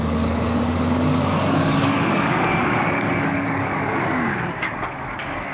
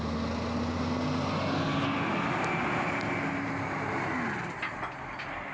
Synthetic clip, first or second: first